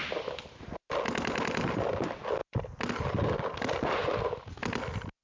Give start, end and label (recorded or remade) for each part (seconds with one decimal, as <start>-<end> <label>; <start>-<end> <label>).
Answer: 0.0-5.2 recorded